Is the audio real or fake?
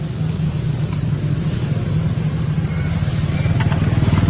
real